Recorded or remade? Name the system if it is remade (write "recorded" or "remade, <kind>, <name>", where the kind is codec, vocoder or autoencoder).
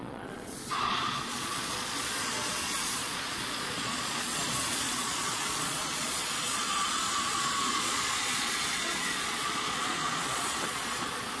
remade, vocoder, Vocos